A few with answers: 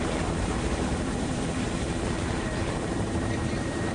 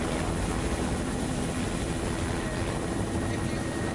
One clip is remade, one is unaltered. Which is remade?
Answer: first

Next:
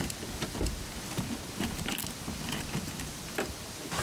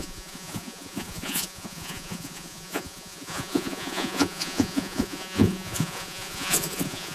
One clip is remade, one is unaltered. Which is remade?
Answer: second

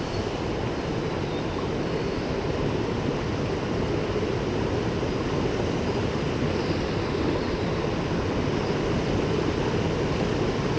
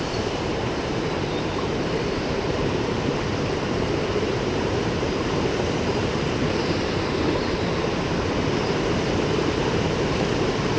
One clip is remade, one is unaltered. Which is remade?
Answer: second